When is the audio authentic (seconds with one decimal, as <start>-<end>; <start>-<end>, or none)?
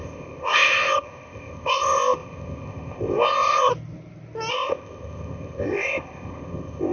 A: 3.7-4.5